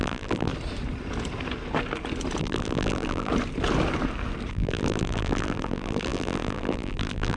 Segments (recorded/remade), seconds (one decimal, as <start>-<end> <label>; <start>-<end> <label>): 0.0-0.5 remade; 0.5-2.4 recorded; 2.4-3.3 remade; 3.3-4.5 recorded; 4.5-7.4 remade

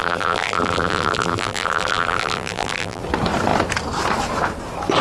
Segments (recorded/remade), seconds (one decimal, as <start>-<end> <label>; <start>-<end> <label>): 0.0-3.0 remade; 3.0-5.0 recorded